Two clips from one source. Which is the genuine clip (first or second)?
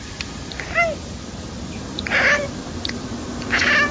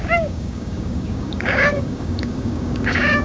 first